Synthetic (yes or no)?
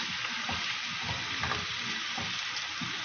no